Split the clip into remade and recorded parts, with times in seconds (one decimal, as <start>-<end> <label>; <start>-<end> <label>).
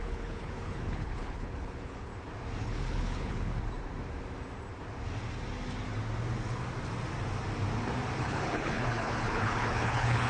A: 0.0-2.1 remade; 2.1-2.6 recorded; 2.6-3.5 remade; 3.5-8.2 recorded; 8.2-10.3 remade